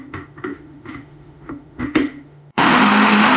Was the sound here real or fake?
fake